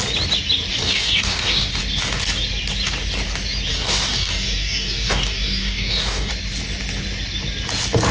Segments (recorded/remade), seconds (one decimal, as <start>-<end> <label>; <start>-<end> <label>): 0.0-0.7 recorded; 0.7-1.7 remade; 1.7-3.7 recorded; 3.7-6.3 remade; 6.3-8.1 recorded